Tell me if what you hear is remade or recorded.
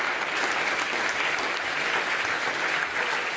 recorded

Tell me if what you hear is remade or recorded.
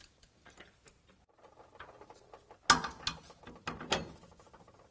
recorded